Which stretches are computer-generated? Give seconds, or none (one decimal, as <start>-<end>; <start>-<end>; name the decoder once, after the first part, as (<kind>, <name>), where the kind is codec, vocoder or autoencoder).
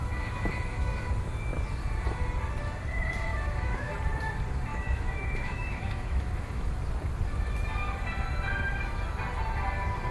0.0-1.1 (autoencoder, DAC-VAE); 3.3-3.9; 4.7-6.8